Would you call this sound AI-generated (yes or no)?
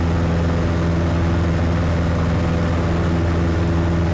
no